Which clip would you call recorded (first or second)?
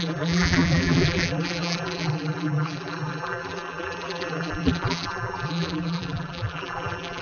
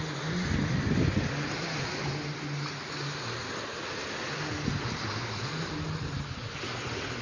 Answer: second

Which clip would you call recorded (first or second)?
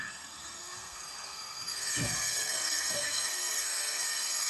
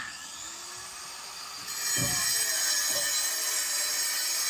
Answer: second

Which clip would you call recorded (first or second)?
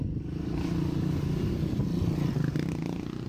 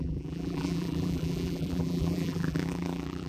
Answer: first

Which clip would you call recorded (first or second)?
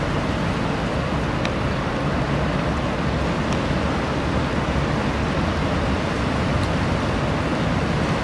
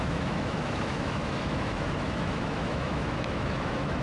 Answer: first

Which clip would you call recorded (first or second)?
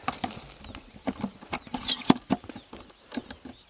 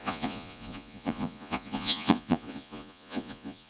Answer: first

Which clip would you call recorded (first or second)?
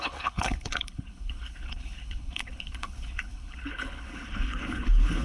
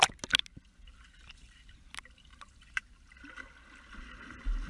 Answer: second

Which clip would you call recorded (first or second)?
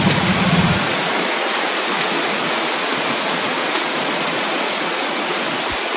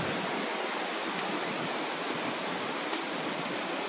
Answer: second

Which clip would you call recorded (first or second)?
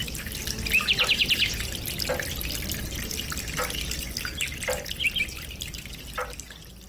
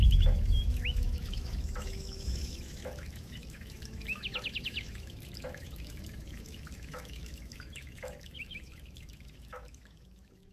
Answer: first